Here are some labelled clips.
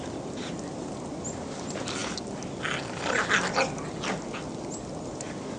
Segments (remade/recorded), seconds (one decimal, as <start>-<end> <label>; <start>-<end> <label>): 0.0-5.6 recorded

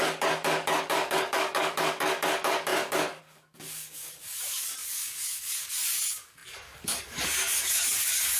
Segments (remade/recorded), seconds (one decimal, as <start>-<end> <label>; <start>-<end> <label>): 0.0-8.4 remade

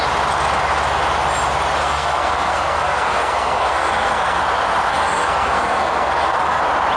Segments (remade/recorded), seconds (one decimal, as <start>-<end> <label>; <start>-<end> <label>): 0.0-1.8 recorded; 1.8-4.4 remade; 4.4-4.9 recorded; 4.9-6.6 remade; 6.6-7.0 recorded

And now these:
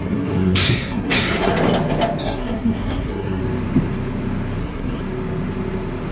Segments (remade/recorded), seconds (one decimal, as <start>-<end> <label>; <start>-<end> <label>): 0.0-1.5 remade; 1.5-2.2 recorded; 2.2-3.4 remade; 3.4-4.6 recorded; 4.6-5.0 remade; 5.0-6.1 recorded